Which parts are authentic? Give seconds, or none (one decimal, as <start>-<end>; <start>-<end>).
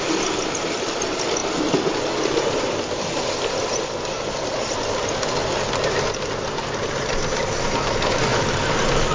0.0-9.1